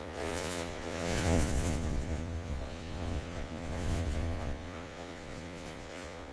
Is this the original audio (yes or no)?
no